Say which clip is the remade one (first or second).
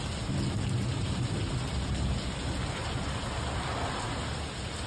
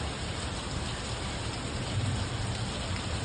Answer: second